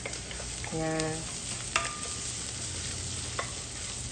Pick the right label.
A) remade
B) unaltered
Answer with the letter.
B